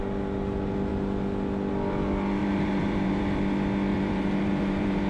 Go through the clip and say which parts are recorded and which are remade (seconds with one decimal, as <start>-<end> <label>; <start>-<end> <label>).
0.0-2.4 recorded; 2.4-3.2 remade; 3.2-3.9 recorded; 3.9-5.1 remade